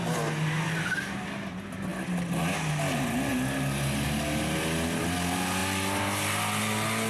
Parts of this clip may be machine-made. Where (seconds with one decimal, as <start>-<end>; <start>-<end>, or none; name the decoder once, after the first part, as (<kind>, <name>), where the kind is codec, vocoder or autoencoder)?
none